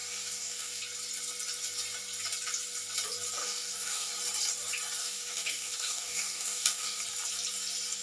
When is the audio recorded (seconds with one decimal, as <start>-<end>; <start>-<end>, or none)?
0.8-3.4; 4.1-5.0; 7.0-8.0